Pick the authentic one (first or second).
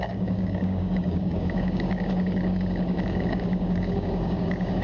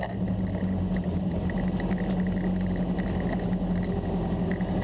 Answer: second